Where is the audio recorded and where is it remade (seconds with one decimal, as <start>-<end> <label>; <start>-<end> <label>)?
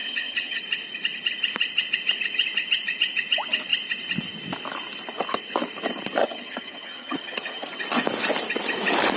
0.0-0.6 remade; 0.6-6.2 recorded; 6.2-7.8 remade; 7.8-9.2 recorded